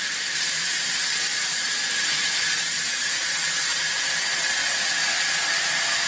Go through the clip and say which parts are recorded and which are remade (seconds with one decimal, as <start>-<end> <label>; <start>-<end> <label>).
0.0-4.6 remade; 4.6-5.4 recorded; 5.4-6.1 remade